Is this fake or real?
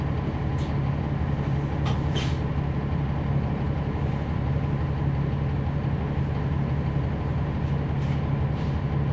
real